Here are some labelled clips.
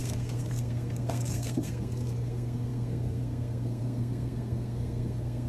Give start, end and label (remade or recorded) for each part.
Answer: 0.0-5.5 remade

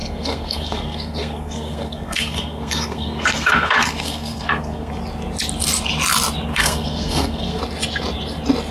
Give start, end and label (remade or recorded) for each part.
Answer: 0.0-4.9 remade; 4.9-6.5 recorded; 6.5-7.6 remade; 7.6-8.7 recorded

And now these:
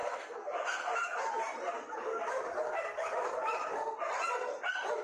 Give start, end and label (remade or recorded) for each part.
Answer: 0.0-1.2 remade; 1.2-5.0 recorded